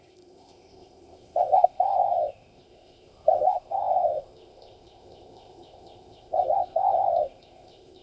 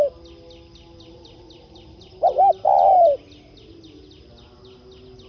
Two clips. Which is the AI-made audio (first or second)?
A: first